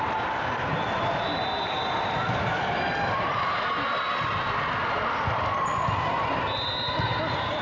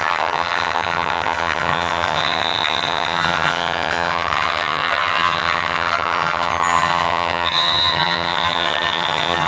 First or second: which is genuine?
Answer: first